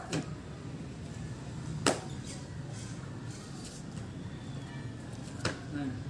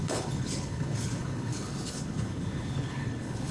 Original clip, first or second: first